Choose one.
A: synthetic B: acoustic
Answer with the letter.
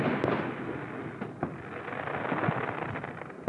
B